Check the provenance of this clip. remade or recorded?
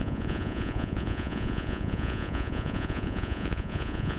remade